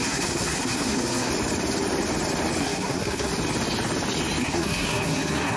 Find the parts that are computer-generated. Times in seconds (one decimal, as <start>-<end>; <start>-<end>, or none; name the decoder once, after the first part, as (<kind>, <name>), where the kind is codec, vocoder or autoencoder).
0.0-1.3 (codec, SNAC); 2.6-3.3; 4.4-5.6